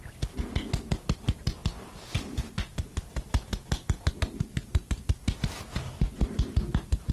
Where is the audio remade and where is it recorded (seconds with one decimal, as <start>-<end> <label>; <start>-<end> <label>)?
0.0-7.1 recorded